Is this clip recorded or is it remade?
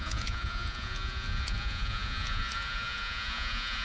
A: remade